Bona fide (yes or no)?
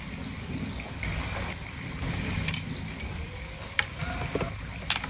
yes